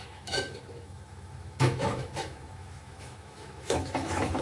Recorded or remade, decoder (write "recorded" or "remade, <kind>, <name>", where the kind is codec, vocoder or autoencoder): remade, autoencoder, DAC-VAE